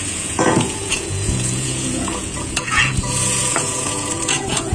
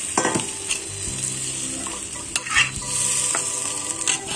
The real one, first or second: second